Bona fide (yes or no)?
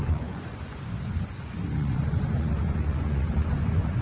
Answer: no